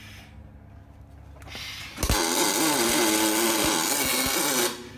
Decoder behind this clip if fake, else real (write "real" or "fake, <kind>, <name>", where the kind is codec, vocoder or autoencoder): real